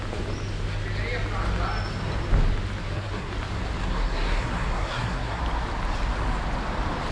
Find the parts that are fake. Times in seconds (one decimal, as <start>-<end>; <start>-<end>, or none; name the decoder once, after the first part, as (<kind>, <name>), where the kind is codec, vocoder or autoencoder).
2.8-3.3 (codec, SNAC); 3.8-5.4